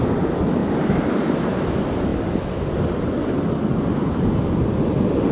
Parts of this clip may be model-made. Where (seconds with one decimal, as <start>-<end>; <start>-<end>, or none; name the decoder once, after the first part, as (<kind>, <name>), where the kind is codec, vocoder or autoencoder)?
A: 2.1-4.8 (vocoder, BigVGAN v2)